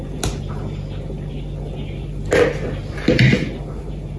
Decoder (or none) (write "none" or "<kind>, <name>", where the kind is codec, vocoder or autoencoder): none